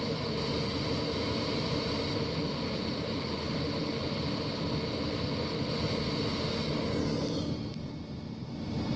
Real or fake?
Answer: real